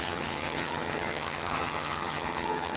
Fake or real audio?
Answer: fake